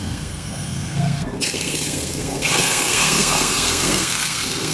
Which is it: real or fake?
fake